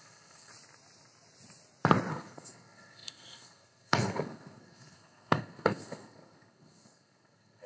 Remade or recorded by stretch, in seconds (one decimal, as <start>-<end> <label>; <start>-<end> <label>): 0.0-0.5 remade; 0.5-2.1 recorded; 2.1-7.7 remade